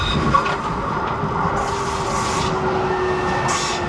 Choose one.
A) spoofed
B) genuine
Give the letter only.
B